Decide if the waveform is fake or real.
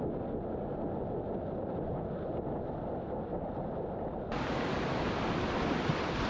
real